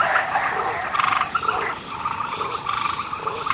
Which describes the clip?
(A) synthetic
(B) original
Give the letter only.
B